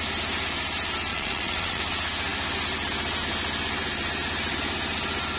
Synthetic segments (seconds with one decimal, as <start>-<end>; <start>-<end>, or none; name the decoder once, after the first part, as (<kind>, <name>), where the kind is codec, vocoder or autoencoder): 1.1-1.8 (vocoder, Vocos)